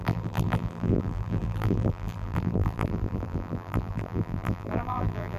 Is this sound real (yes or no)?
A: no